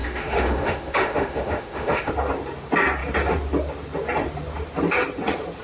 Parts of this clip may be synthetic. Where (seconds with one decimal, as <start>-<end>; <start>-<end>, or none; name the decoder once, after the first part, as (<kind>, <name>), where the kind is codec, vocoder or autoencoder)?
0.0-2.1 (autoencoder, DAC-VAE)